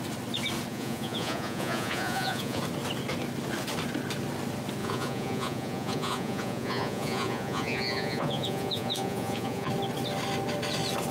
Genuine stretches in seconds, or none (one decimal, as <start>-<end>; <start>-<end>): 0.0-0.7; 2.6-4.8; 9.7-11.1